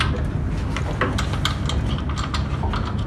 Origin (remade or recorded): recorded